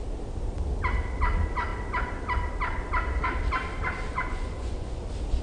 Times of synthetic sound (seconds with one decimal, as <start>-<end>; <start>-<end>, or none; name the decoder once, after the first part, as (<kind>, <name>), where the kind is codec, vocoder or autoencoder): 4.1-5.0 (vocoder, Vocos)

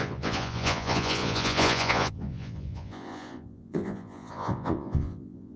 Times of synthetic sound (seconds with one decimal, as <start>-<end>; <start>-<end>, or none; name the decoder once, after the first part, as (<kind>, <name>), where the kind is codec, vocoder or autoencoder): 0.0-5.6 (vocoder, Vocos)

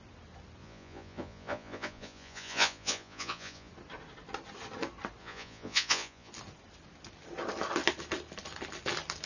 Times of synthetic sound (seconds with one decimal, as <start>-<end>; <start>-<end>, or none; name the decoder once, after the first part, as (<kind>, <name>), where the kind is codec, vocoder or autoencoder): 0.6-3.7 (vocoder, Vocos); 5.2-6.3

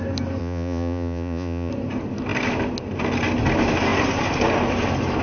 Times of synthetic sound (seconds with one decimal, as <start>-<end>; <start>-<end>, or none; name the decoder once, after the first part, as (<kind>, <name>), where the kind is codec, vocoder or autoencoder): 0.4-1.7 (vocoder, Vocos)

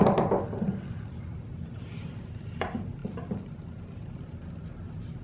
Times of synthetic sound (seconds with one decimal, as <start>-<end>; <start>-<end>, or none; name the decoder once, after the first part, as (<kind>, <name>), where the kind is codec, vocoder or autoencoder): none